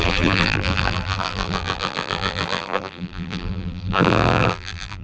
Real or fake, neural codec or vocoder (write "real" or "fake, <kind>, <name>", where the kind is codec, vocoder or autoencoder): fake, vocoder, BigVGAN v2